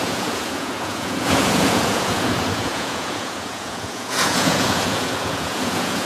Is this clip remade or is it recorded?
remade